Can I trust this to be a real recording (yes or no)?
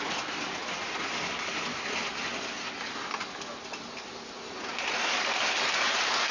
yes